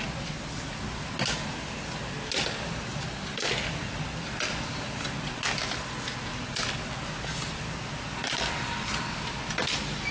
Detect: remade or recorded recorded